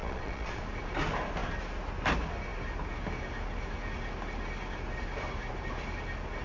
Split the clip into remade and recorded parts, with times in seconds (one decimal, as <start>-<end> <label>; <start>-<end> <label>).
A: 0.0-0.6 remade; 0.6-6.4 recorded